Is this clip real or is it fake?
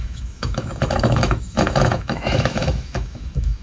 fake